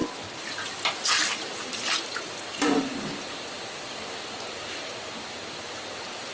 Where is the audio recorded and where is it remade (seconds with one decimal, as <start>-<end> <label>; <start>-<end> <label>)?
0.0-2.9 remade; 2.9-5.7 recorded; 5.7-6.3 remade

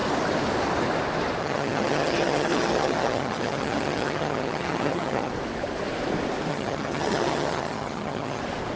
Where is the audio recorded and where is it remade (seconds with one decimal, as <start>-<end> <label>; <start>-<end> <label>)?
0.0-1.4 recorded; 1.4-5.3 remade; 5.3-6.5 recorded; 6.5-8.4 remade; 8.4-8.8 recorded

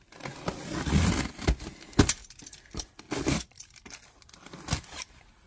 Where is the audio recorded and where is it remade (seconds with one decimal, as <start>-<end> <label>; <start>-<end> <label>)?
0.0-5.5 recorded